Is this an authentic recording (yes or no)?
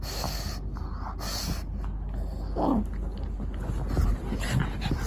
yes